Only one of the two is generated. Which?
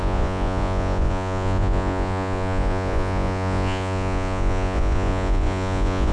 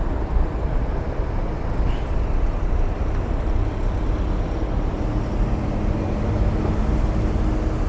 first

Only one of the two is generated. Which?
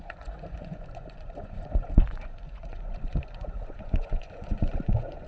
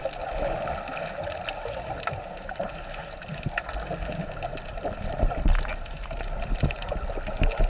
first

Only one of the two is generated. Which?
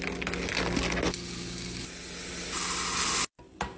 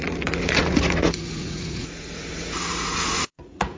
second